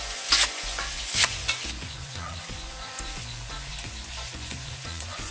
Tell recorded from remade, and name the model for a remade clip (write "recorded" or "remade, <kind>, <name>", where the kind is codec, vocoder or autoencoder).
remade, vocoder, Vocos